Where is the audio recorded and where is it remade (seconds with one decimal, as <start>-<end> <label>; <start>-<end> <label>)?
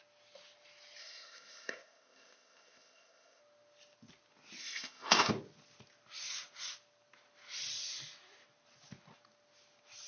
0.0-1.0 recorded; 1.0-3.4 remade; 3.4-4.6 recorded; 4.6-5.3 remade; 5.3-10.1 recorded